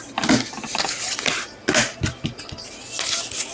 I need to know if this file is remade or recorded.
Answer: recorded